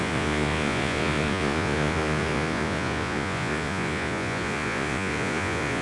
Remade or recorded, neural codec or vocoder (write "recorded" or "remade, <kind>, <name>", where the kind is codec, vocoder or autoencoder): remade, vocoder, Vocos